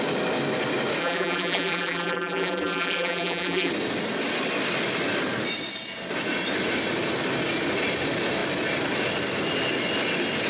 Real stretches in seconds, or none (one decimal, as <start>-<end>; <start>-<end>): 0.0-1.0; 3.7-10.5